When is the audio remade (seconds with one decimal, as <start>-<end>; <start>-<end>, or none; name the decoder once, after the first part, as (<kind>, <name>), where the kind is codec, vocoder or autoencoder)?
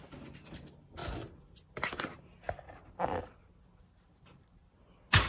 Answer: none